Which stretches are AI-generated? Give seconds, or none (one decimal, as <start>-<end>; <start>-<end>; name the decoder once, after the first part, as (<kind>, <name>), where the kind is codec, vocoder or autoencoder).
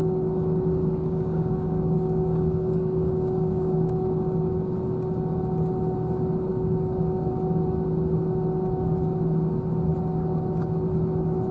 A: 0.0-4.7 (codec, DAC); 6.5-7.3